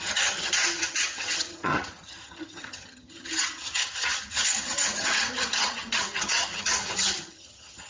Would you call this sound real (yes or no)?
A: no